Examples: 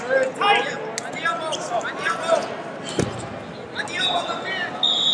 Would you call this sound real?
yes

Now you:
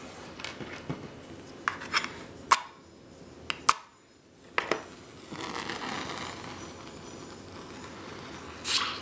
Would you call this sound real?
yes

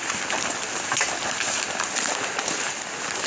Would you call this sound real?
yes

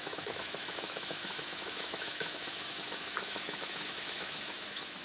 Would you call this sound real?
no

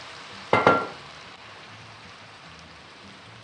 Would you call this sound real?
no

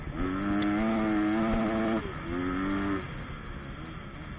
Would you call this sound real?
yes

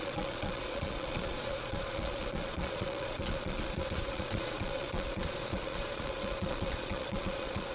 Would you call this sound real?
no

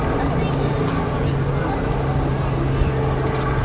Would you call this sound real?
yes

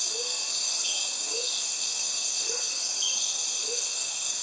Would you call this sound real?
no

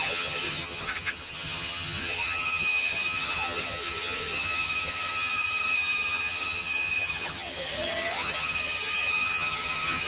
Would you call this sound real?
no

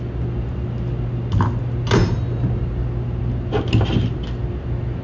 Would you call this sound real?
yes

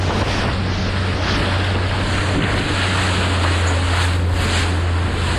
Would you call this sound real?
yes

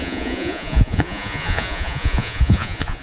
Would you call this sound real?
no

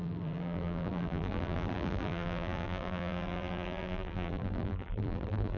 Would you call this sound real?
no